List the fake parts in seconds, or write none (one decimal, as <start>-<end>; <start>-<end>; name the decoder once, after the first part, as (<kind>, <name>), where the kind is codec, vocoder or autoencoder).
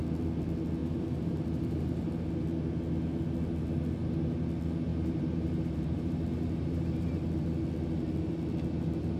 0.8-2.1 (vocoder, BigVGAN v2); 4.9-7.2